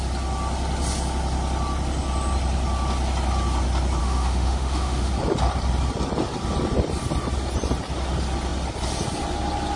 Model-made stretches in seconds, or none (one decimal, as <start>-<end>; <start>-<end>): 4.0-5.1

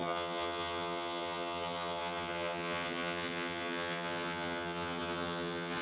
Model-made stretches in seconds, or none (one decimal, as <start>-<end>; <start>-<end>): 0.0-5.8

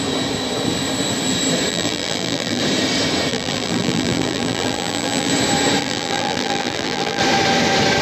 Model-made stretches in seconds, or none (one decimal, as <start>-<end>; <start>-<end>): 1.7-2.6; 3.3-5.3; 5.8-7.2